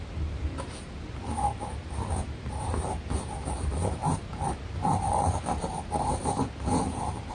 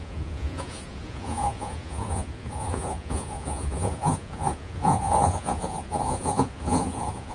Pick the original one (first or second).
first